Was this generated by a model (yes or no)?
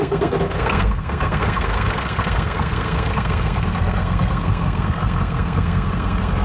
yes